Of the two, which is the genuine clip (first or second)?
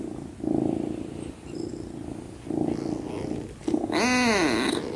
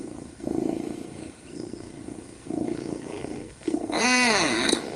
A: first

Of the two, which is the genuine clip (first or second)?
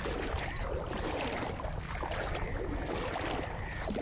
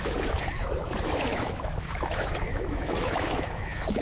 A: first